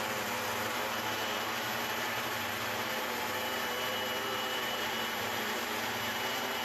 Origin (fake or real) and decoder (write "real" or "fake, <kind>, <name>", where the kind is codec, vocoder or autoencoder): fake, vocoder, BigVGAN v2